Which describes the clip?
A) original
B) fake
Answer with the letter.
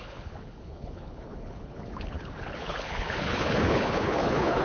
B